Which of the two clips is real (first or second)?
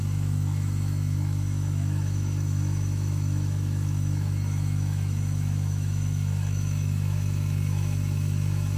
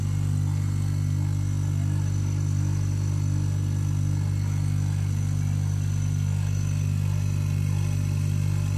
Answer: second